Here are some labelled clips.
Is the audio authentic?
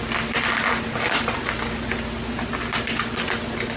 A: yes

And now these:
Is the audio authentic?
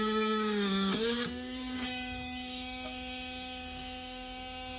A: no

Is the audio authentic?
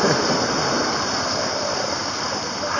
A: yes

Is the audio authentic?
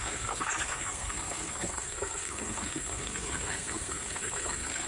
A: no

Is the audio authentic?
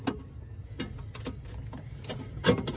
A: yes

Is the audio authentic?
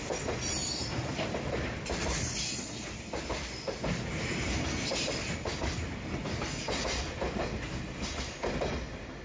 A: yes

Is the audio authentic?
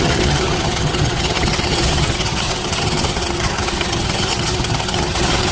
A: no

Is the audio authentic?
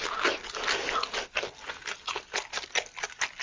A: yes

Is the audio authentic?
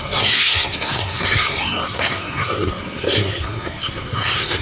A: no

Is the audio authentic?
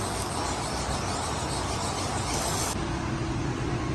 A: yes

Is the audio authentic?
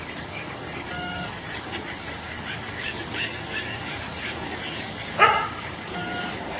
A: no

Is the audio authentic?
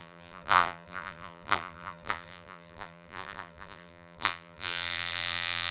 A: no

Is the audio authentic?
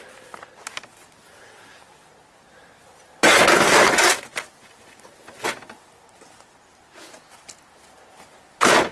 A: yes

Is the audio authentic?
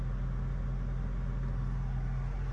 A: yes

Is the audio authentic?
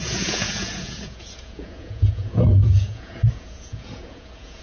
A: no